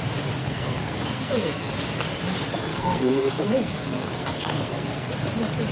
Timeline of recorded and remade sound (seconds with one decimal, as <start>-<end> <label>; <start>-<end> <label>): 0.0-0.4 recorded; 0.4-1.7 remade; 1.7-2.7 recorded; 2.7-5.1 remade; 5.1-5.7 recorded

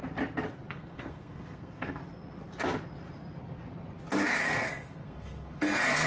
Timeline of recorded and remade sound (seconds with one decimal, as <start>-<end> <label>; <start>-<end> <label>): 0.0-0.7 recorded; 0.7-2.0 remade; 2.0-4.4 recorded; 4.4-6.1 remade